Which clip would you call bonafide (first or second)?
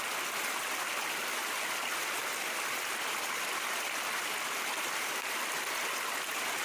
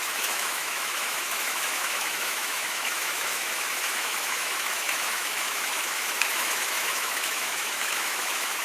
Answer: first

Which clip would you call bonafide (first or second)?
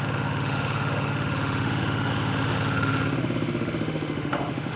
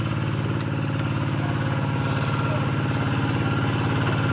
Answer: second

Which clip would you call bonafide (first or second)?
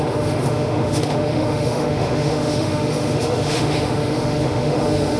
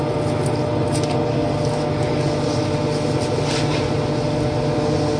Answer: second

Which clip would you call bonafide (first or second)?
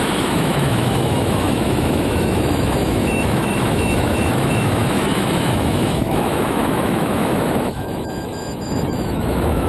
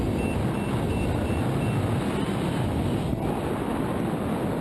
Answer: second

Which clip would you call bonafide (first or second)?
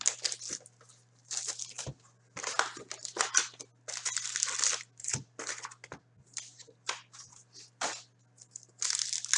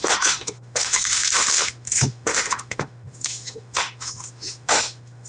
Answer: first